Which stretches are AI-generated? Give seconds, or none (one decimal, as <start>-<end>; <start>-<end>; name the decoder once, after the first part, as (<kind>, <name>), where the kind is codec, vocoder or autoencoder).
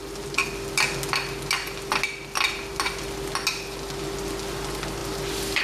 none